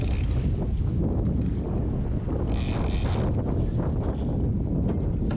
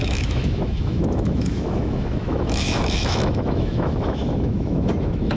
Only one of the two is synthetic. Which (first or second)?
second